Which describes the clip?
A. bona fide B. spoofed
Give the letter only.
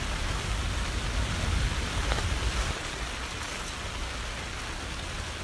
A